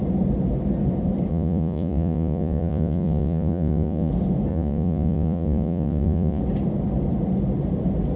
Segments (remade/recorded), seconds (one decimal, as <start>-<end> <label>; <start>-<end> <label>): 0.0-1.3 recorded; 1.3-4.1 remade; 4.1-4.5 recorded; 4.5-6.4 remade; 6.4-8.2 recorded